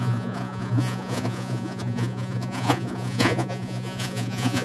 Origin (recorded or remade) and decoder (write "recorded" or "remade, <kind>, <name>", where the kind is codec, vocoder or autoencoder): remade, vocoder, Vocos